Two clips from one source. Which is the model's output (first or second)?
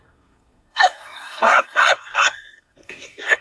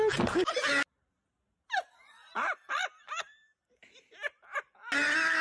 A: first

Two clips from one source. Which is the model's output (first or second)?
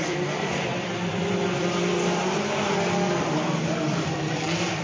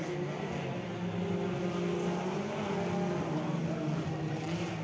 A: first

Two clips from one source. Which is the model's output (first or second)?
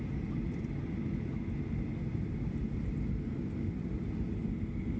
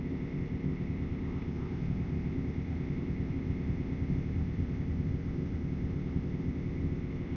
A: second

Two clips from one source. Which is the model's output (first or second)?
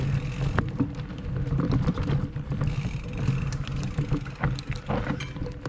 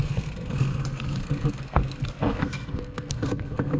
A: second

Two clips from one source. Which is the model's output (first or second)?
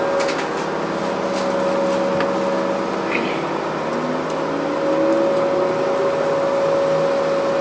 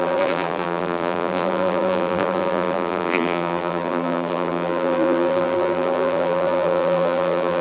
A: second